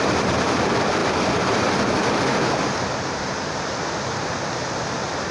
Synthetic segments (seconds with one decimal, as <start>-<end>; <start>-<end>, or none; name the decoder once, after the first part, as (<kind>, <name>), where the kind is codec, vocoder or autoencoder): none